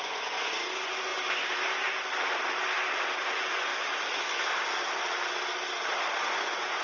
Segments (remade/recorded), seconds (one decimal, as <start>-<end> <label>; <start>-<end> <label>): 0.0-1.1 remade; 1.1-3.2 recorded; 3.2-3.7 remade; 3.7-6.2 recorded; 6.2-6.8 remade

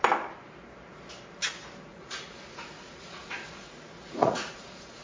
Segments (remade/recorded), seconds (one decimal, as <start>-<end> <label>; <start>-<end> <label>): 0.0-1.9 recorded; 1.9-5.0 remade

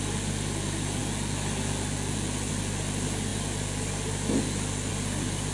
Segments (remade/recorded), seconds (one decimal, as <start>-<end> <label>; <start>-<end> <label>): 0.0-5.5 recorded

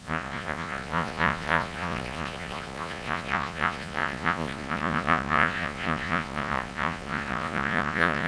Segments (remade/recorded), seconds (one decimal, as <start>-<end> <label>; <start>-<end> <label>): 0.0-8.3 remade